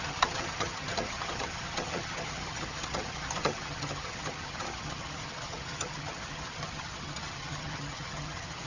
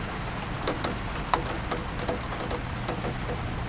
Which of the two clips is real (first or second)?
second